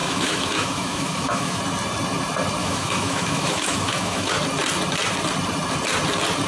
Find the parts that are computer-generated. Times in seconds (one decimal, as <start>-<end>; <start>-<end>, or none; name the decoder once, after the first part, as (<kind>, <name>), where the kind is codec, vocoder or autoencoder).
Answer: 0.0-1.6 (autoencoder, DAC-VAE); 2.6-4.3